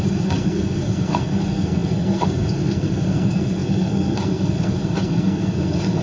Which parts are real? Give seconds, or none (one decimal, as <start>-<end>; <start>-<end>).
none